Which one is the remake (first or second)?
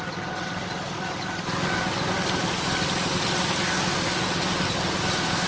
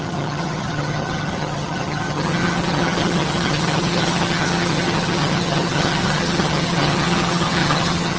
second